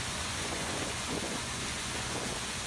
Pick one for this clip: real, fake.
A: fake